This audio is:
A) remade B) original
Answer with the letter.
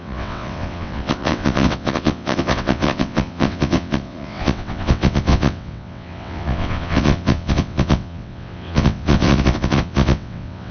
A